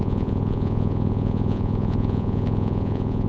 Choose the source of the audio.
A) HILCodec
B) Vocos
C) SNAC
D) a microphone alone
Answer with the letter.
B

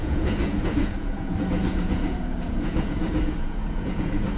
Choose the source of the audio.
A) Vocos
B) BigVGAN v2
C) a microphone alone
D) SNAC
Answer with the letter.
A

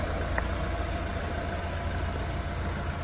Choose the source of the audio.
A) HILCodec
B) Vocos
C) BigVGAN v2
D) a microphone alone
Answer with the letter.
D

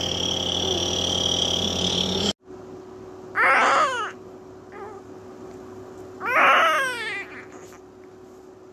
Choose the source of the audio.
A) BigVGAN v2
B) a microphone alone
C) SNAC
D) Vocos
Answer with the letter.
B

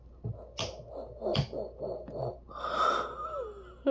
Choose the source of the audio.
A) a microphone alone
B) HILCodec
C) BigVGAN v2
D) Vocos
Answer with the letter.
A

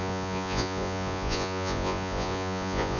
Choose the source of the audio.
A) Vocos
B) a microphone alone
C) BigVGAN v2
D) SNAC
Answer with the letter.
A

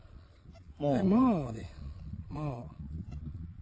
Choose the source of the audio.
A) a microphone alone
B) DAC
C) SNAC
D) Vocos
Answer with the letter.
D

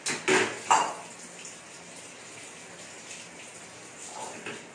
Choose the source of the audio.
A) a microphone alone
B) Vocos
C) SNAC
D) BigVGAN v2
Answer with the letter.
A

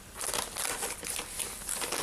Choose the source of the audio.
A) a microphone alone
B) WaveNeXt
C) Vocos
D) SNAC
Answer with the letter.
A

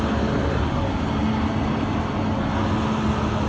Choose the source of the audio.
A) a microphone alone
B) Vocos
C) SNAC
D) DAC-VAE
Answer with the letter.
A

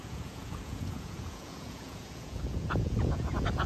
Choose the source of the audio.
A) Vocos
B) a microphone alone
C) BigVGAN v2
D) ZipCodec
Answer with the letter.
A